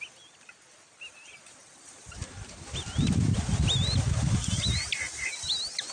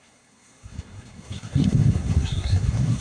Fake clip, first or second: second